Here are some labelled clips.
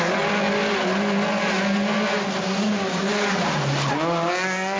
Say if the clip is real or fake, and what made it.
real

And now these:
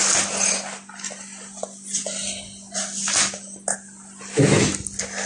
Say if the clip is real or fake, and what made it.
real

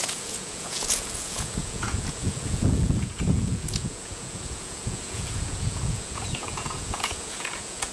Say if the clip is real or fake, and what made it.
fake, vocoder, Vocos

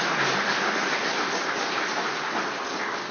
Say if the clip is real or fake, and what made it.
real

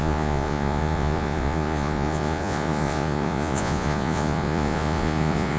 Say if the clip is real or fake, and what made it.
fake, vocoder, Vocos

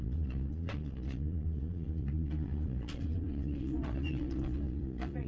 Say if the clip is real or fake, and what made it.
fake, vocoder, Vocos